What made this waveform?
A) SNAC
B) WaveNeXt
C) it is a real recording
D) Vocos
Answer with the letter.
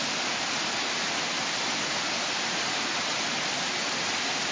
C